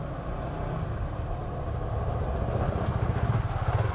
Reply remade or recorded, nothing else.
recorded